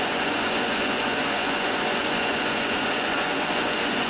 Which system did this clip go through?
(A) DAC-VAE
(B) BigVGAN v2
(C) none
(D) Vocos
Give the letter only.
D